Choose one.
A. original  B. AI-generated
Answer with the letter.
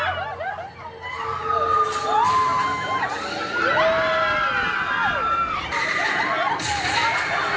A